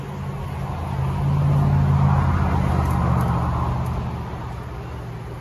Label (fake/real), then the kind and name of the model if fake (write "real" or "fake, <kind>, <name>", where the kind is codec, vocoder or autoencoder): real